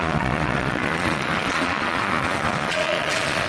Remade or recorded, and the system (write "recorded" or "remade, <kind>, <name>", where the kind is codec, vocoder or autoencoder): remade, vocoder, Vocos